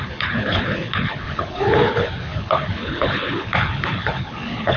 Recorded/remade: remade